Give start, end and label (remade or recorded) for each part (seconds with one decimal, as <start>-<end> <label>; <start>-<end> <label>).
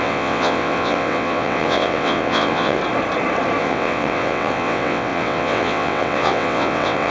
0.0-2.8 remade; 2.8-3.6 recorded; 3.6-7.1 remade